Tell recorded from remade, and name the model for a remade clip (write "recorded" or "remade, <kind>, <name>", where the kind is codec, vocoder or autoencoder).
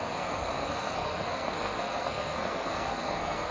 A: remade, codec, SNAC